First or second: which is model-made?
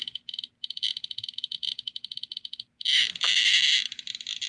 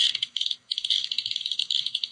second